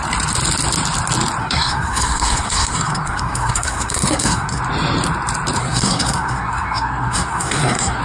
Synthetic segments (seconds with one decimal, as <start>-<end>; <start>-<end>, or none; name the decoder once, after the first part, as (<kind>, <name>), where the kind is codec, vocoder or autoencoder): 1.4-4.6 (codec, SNAC); 5.6-8.0